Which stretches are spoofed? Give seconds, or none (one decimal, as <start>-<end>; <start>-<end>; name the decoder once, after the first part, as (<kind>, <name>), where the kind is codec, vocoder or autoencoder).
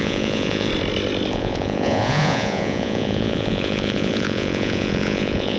0.0-0.7 (vocoder, Vocos); 1.3-5.6